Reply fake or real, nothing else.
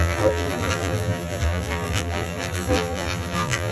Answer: fake